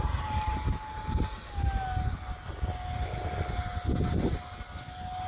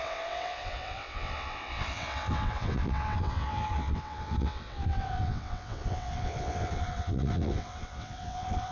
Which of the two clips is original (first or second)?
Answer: first